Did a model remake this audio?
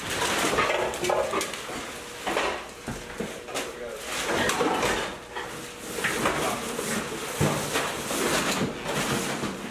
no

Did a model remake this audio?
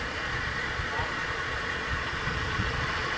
yes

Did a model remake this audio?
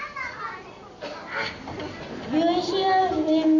no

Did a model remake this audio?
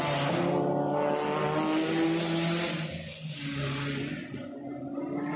no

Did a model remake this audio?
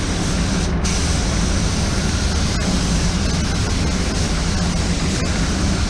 no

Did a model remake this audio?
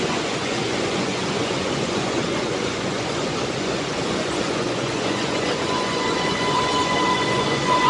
yes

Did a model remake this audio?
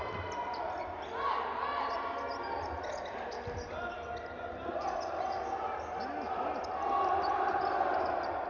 no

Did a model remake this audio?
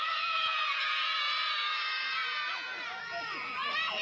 yes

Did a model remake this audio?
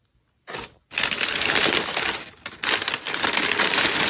no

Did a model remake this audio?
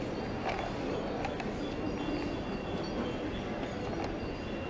no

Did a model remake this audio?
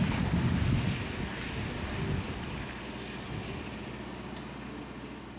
no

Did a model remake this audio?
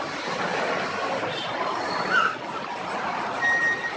no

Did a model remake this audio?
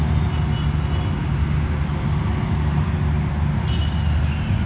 no